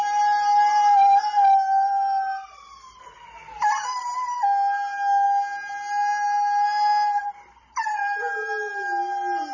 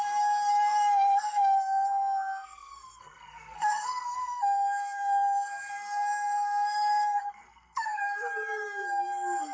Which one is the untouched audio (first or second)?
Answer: first